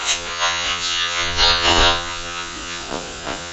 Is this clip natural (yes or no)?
no